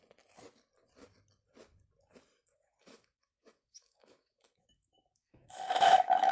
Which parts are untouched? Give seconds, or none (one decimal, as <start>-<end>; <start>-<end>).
0.0-2.5